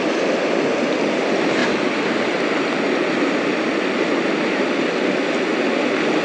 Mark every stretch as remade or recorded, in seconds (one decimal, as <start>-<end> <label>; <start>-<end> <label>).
0.0-6.2 recorded